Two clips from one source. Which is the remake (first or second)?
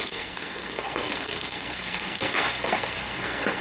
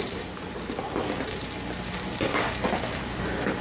first